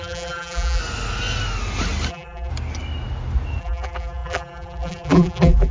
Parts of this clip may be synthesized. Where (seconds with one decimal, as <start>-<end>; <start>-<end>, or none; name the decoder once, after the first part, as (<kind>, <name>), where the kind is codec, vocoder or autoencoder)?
0.0-0.8 (vocoder, BigVGAN v2); 2.1-2.5; 3.6-5.7